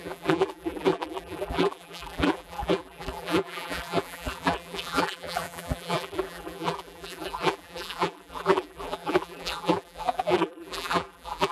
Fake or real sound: fake